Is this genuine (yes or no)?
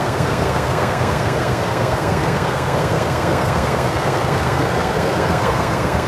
no